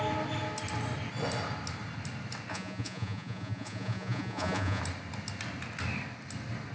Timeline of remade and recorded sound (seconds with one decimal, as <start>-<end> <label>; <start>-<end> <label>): 0.0-2.5 recorded; 2.5-4.8 remade; 4.8-6.7 recorded